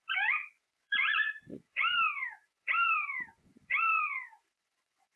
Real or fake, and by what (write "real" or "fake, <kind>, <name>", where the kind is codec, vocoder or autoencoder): fake, vocoder, Vocos